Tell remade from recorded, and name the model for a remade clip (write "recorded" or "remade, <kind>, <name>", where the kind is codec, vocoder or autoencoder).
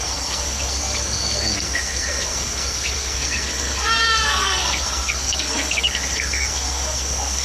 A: remade, codec, SNAC